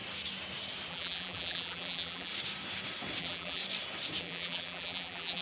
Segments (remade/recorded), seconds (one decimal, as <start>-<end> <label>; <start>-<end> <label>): 0.0-0.9 recorded; 0.9-2.3 remade; 2.3-3.2 recorded; 3.2-3.6 remade; 3.6-4.2 recorded; 4.2-5.4 remade